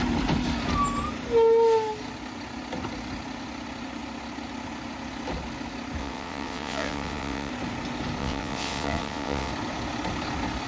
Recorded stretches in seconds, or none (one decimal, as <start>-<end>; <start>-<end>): 0.0-6.0; 7.5-8.2; 9.5-10.7